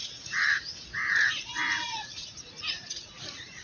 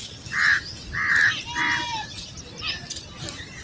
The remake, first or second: first